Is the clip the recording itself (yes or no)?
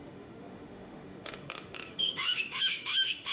no